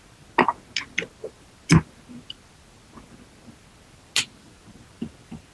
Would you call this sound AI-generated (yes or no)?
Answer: no